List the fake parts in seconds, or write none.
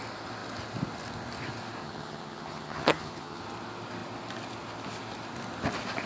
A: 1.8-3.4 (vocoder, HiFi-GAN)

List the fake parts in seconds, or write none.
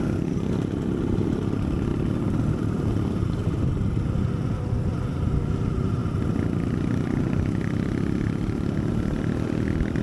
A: none